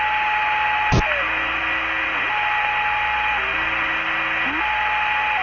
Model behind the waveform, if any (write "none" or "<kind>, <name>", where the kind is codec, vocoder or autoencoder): none